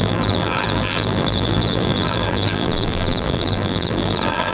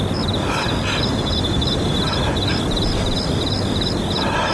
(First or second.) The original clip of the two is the second